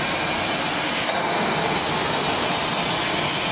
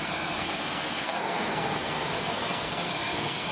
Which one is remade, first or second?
second